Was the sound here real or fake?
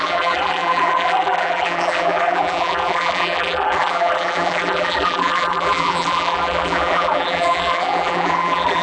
fake